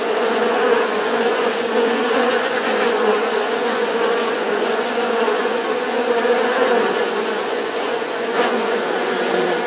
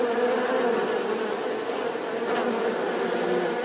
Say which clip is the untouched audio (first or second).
second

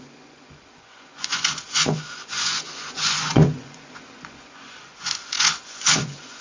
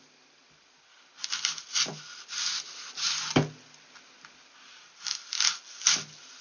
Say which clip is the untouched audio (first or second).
second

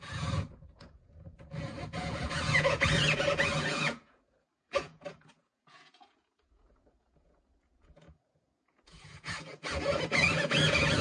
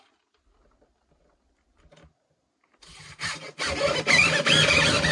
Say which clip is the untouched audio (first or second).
second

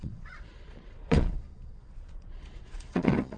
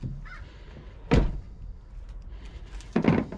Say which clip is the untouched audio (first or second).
second